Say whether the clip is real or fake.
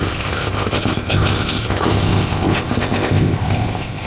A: fake